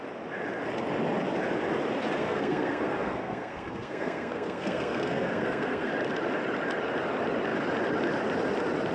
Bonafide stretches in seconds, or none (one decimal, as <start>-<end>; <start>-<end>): 0.0-2.2; 5.9-8.9